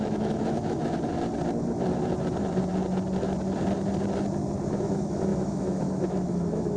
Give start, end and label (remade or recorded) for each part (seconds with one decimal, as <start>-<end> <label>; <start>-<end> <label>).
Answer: 0.0-0.8 remade; 0.8-4.7 recorded; 4.7-6.8 remade